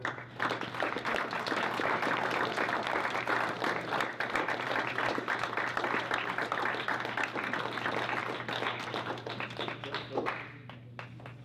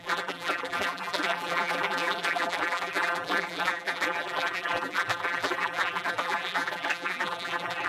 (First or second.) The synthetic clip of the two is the second